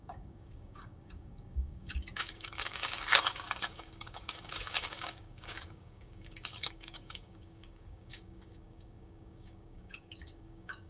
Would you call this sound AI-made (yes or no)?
yes